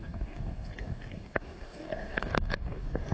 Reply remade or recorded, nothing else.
remade